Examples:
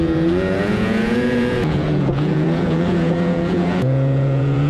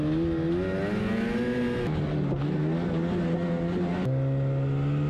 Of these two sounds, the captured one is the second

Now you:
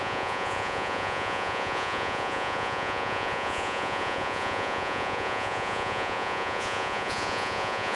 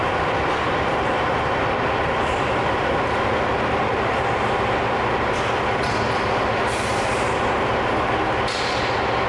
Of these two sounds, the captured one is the second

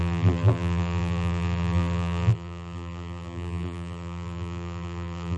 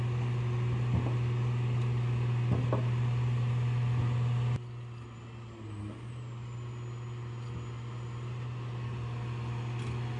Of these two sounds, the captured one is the second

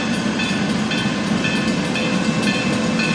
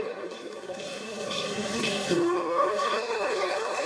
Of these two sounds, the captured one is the first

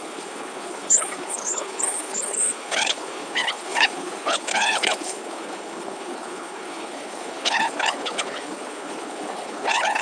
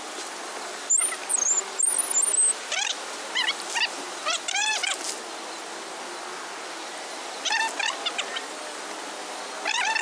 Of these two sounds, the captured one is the second